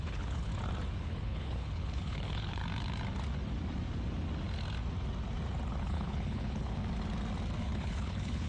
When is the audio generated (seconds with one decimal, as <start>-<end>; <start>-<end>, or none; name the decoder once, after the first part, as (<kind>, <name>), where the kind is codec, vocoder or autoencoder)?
0.0-0.5 (codec, HILCodec); 1.0-2.6; 5.7-6.8; 7.6-8.5